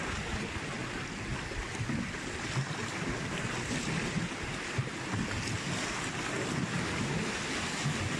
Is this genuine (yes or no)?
yes